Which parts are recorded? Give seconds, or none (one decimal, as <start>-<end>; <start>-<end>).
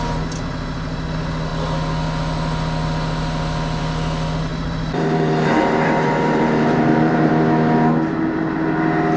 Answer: 0.0-4.5; 7.3-9.2